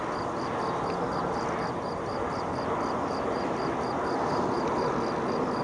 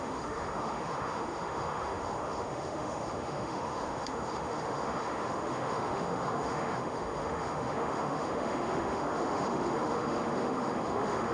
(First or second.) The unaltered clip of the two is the first